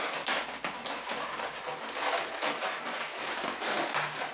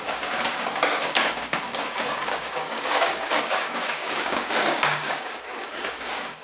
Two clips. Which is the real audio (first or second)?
first